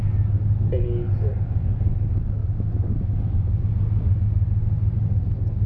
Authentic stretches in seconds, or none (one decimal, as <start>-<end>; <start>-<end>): 0.0-5.7